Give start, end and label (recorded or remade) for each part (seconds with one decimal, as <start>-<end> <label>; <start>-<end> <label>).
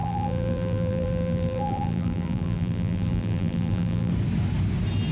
0.0-4.1 remade; 4.1-5.1 recorded